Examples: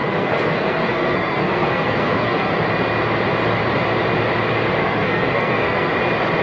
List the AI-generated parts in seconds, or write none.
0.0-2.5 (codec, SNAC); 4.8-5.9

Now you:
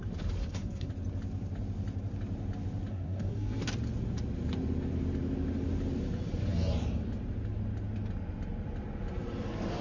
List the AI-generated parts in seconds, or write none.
0.4-0.9 (codec, SNAC); 2.9-3.6

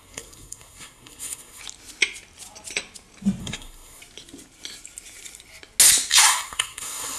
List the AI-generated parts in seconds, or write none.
0.0-1.6 (codec, SNAC); 3.4-4.0; 6.1-7.2

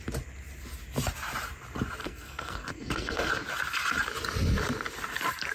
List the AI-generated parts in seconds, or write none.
2.0-3.3 (codec, SNAC)

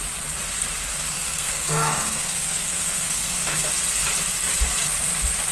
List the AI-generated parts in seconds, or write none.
0.9-3.7 (codec, SNAC)

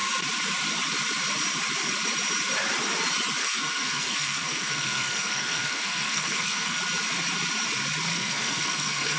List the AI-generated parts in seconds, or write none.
3.4-6.8 (codec, SNAC); 8.1-9.2

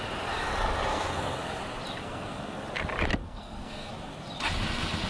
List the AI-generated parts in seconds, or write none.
0.9-1.6 (codec, SNAC); 2.0-2.6; 3.2-3.9